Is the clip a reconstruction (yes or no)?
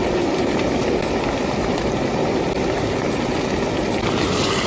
yes